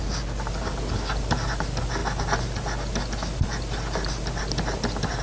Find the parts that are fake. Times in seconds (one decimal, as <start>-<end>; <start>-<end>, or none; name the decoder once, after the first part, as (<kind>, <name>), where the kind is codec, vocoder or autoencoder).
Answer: none